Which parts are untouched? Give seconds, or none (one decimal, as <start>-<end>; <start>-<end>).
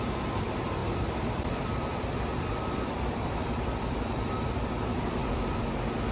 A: 0.0-0.8; 4.5-5.2